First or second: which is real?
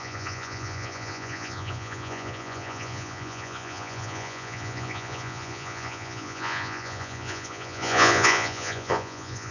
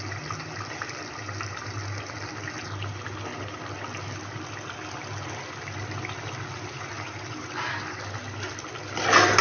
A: second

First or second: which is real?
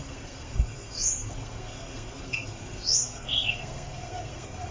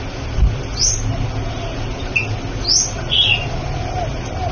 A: second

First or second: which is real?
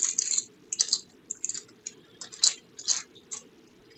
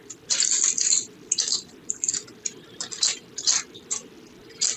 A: first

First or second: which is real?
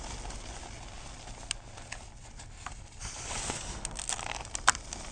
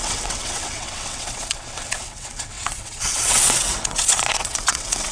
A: first